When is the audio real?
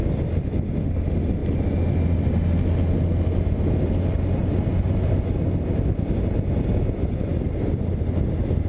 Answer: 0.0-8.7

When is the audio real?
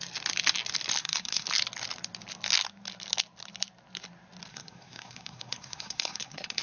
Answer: 0.0-1.0; 1.5-4.5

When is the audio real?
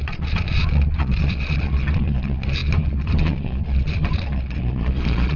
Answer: none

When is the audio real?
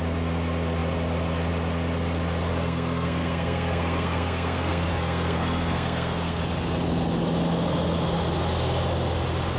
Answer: 0.0-2.5; 6.4-9.6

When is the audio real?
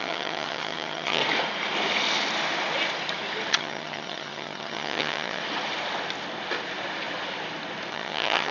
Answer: 1.2-3.5; 5.4-7.9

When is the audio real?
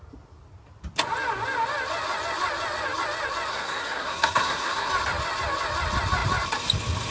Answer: 0.0-3.5; 4.9-7.1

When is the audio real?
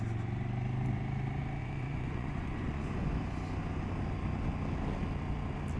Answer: 0.0-1.6; 3.1-5.8